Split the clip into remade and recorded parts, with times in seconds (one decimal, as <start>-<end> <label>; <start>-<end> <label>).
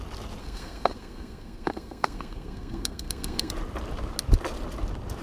0.0-0.4 recorded; 0.4-3.5 remade; 3.5-5.2 recorded